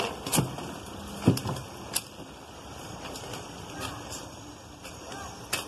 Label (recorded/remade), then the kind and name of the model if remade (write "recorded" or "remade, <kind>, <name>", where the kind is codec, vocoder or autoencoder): recorded